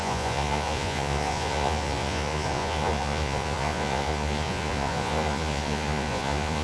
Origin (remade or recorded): remade